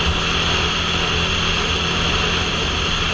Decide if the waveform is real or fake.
real